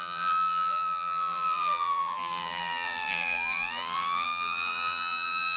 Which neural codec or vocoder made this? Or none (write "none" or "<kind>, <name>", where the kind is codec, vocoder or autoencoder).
vocoder, BigVGAN v2